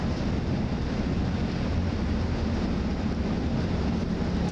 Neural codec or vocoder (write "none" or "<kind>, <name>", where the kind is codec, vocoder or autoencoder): none